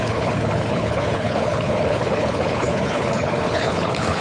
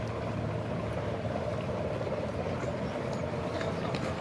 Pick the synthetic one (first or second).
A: first